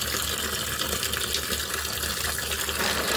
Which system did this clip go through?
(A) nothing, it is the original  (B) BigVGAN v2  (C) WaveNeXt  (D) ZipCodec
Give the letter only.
A